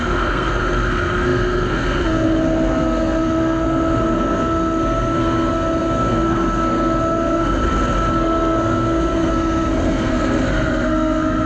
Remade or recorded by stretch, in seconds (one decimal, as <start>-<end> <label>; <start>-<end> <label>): 0.0-7.6 remade; 7.6-8.1 recorded; 8.1-11.5 remade